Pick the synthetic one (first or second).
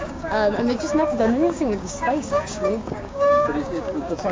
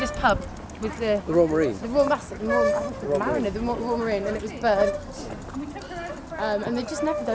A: first